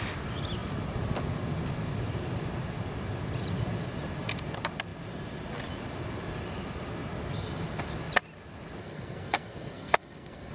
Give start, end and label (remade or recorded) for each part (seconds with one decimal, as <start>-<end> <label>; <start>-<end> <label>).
0.0-8.8 recorded; 8.8-10.5 remade